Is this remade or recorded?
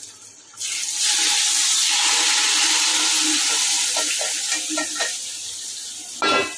recorded